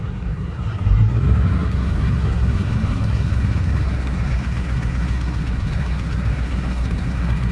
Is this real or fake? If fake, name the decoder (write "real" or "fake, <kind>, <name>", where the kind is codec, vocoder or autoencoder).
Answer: fake, codec, SNAC